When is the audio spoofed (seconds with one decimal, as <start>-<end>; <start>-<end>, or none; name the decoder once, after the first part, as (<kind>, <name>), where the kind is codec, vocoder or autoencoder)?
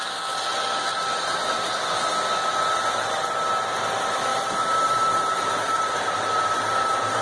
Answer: 4.3-7.2 (vocoder, BigVGAN v2)